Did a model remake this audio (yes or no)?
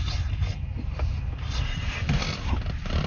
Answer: no